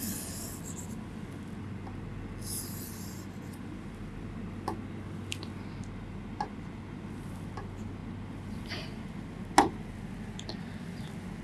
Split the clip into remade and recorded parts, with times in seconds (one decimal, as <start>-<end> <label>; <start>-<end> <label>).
0.0-11.4 recorded